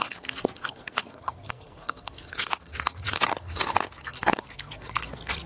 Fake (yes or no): yes